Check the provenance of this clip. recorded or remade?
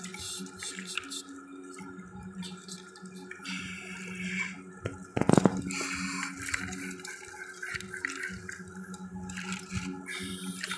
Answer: recorded